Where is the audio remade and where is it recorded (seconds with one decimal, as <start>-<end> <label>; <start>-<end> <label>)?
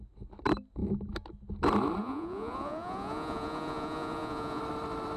0.0-2.0 recorded; 2.0-4.6 remade; 4.6-5.2 recorded